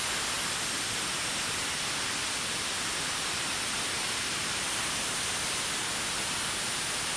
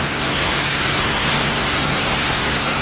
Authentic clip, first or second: first